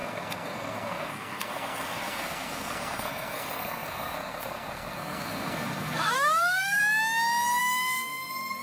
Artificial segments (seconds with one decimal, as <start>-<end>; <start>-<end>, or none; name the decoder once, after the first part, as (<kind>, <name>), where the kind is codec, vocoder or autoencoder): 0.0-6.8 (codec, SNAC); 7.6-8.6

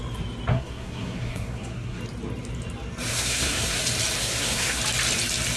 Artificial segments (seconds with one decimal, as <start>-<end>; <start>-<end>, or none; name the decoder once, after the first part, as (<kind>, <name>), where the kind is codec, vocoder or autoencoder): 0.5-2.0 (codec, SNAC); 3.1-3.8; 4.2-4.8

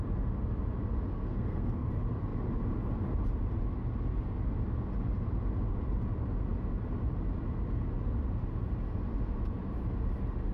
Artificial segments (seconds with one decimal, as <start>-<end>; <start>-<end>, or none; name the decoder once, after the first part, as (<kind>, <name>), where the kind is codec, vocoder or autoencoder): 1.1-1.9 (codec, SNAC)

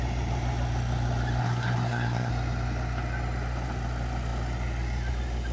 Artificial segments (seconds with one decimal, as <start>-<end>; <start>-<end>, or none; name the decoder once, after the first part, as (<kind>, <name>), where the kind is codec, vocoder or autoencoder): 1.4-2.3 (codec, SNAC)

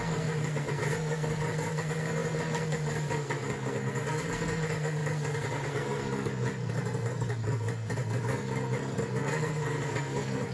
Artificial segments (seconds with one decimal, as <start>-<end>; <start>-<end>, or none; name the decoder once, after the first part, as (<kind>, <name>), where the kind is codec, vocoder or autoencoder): 0.0-10.5 (codec, SNAC)

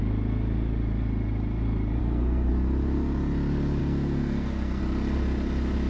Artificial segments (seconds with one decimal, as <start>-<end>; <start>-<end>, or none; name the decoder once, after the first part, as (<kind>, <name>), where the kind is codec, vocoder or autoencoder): 2.0-2.5 (codec, SNAC); 3.8-4.8